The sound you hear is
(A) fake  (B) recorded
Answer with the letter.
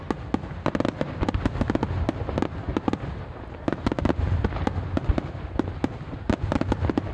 B